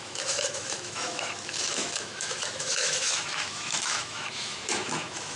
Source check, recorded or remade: remade